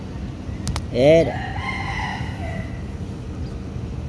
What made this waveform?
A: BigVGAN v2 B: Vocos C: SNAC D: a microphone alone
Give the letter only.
D